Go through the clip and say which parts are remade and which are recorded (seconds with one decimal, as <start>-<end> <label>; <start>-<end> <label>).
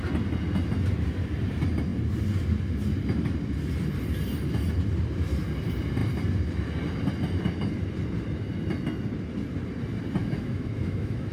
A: 0.0-10.2 recorded; 10.2-11.3 remade